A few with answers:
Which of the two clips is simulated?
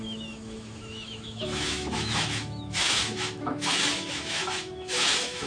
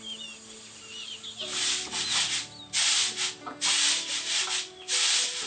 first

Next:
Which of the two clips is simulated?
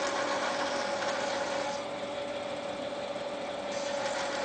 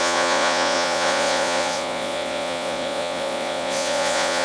second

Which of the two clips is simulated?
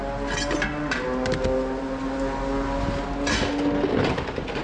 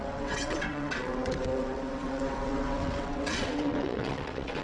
second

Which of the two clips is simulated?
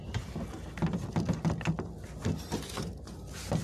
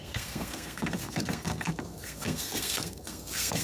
second